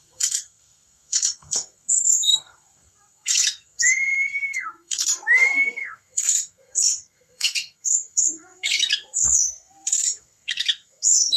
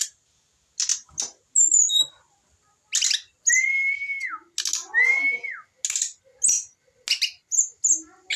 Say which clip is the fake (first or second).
first